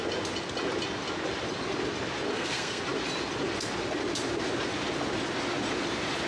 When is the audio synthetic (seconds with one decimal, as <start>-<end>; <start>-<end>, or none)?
2.3-2.8